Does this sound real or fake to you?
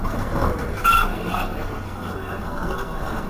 fake